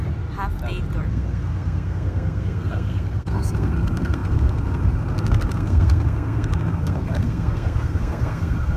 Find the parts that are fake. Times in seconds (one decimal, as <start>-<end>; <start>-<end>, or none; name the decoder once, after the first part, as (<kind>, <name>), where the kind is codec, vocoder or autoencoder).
1.1-8.8 (codec, SNAC)